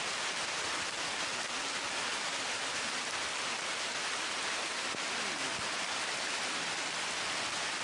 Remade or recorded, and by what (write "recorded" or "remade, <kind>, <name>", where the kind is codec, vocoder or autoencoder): recorded